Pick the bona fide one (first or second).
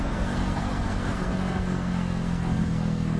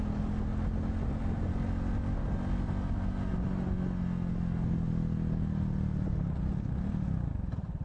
second